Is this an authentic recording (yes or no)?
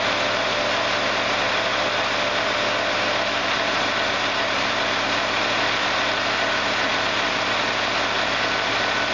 yes